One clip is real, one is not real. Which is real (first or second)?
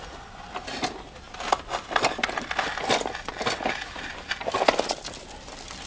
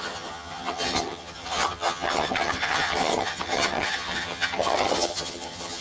first